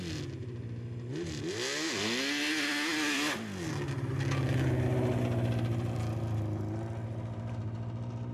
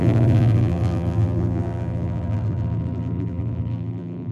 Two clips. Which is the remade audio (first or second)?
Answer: second